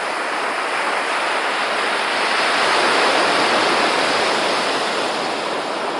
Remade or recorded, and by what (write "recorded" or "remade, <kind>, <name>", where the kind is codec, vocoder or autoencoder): recorded